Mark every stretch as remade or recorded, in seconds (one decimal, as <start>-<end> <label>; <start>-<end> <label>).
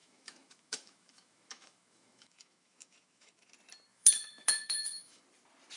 0.0-3.5 remade; 3.5-3.9 recorded; 3.9-5.2 remade; 5.2-5.8 recorded